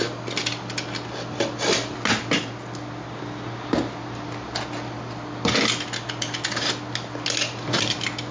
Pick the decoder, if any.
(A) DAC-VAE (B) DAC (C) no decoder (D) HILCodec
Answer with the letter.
C